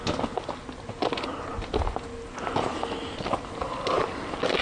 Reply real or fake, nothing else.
real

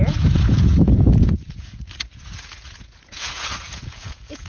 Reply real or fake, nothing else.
fake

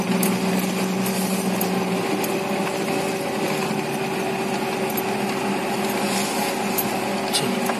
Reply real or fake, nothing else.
real